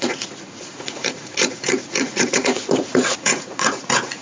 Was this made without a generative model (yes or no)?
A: no